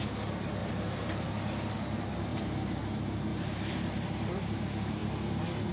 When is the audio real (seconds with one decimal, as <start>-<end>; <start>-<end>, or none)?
0.0-0.6; 1.3-3.3; 4.6-5.7